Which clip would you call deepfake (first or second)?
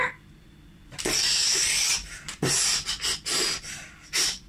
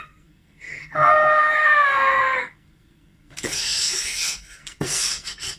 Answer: second